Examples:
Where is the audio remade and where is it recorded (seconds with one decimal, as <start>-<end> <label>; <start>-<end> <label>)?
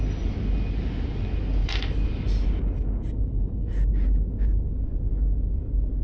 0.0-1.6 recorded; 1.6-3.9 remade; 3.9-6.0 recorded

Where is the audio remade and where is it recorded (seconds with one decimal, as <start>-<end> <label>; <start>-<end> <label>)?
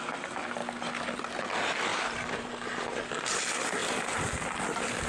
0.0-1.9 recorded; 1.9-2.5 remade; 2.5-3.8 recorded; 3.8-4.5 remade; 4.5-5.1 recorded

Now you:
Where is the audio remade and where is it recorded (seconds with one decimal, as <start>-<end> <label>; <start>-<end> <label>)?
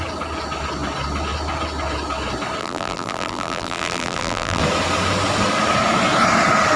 0.0-2.6 recorded; 2.6-4.6 remade; 4.6-6.8 recorded